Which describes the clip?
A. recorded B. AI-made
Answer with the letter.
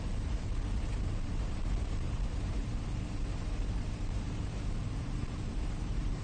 B